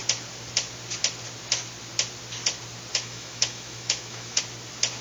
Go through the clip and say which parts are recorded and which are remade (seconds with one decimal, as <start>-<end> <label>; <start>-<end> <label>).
0.0-2.9 recorded; 2.9-4.4 remade; 4.4-5.0 recorded